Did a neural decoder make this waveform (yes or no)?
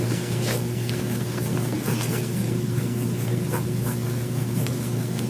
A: yes